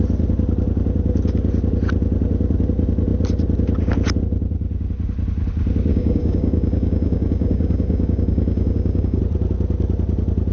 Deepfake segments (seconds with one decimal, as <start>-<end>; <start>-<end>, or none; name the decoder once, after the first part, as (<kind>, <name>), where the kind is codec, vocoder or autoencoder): 5.9-9.2 (codec, DAC)